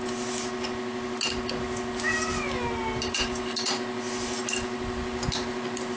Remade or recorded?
recorded